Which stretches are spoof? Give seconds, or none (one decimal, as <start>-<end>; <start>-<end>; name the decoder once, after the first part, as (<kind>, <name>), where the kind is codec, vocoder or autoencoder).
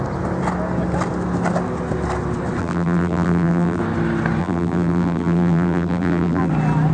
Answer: 2.6-3.8 (vocoder, BigVGAN v2); 4.4-6.5